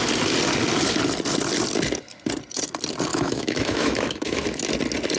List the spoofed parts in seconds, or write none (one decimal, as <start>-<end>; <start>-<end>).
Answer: 3.1-4.6